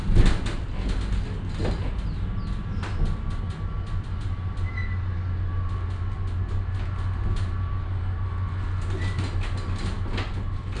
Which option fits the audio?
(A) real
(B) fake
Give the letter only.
A